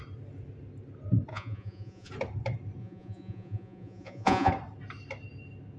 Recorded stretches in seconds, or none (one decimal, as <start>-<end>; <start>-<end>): 0.0-1.3; 2.1-2.8; 4.5-5.8